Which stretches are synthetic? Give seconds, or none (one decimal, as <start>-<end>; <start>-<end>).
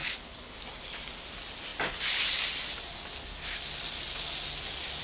0.0-0.5